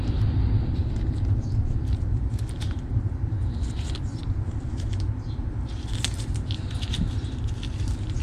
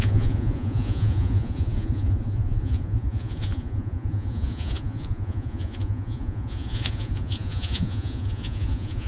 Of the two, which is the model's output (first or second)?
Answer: second